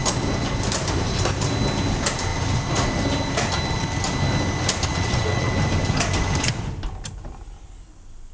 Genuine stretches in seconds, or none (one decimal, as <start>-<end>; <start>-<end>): 0.0-4.9; 5.6-8.3